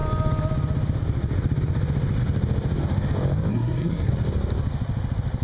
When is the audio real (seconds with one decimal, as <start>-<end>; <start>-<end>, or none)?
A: 0.0-3.5; 4.1-5.4